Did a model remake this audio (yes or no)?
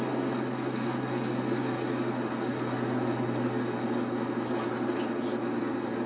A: no